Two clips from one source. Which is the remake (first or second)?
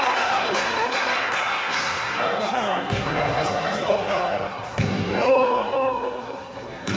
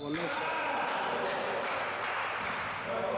first